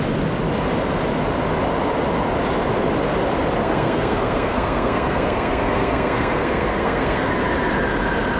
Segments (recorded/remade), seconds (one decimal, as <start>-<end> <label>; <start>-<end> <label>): 0.0-3.6 recorded; 3.6-7.3 remade; 7.3-8.4 recorded